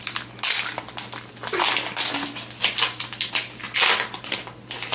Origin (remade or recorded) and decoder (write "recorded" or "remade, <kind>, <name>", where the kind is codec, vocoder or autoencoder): recorded